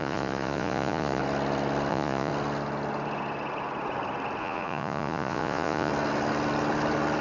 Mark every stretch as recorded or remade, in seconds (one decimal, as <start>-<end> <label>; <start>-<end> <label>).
0.0-1.2 remade; 1.2-1.9 recorded; 1.9-2.3 remade; 2.3-4.4 recorded; 4.4-5.9 remade; 5.9-7.2 recorded